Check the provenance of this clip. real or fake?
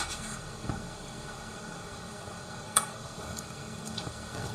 fake